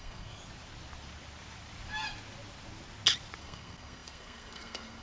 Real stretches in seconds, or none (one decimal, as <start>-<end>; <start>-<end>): 0.4-3.4